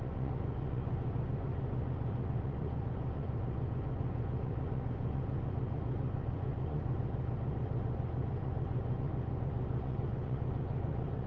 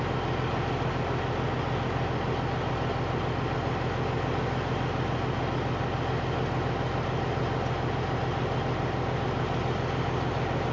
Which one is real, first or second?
second